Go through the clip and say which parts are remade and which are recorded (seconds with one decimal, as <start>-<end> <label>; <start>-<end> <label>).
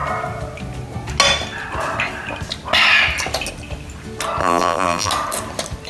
0.0-4.4 recorded; 4.4-5.1 remade; 5.1-5.9 recorded